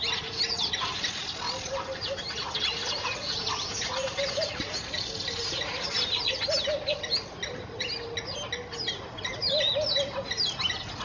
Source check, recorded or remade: recorded